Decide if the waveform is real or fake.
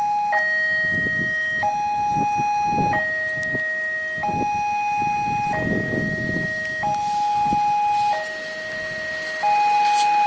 real